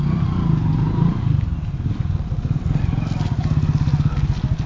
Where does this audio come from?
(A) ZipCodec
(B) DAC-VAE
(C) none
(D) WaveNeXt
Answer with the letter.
C